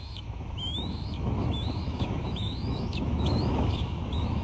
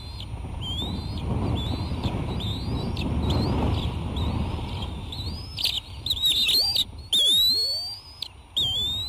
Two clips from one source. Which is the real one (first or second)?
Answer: second